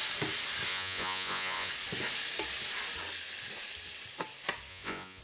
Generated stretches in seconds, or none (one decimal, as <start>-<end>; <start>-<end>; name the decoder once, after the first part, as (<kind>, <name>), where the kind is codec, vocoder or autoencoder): 0.7-1.7 (vocoder, Vocos); 4.7-5.2